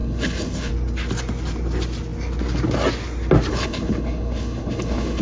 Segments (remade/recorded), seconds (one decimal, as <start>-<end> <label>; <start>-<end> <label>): 0.0-0.7 remade; 0.7-3.5 recorded; 3.5-5.2 remade